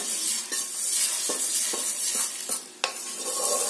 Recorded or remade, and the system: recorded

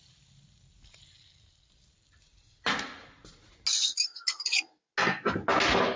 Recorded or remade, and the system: recorded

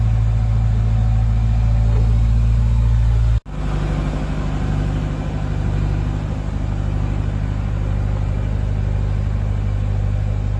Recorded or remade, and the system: recorded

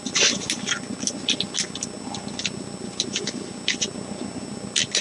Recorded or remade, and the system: recorded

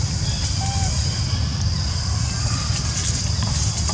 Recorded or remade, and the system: recorded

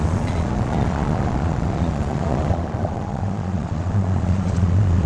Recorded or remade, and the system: remade, vocoder, Vocos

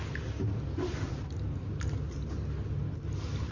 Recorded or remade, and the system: recorded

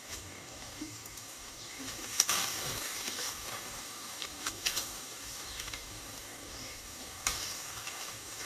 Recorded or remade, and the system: remade, codec, DAC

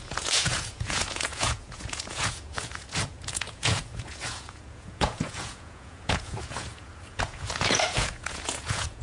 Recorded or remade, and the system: remade, vocoder, Vocos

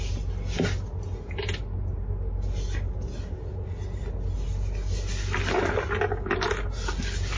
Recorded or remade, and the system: recorded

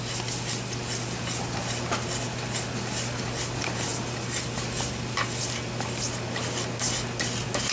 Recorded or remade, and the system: recorded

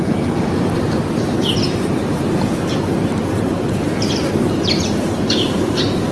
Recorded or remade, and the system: remade, vocoder, BigVGAN v2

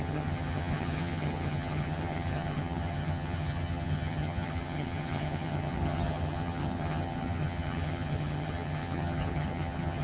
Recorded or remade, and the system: remade, vocoder, HiFi-GAN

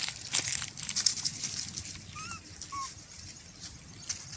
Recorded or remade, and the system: recorded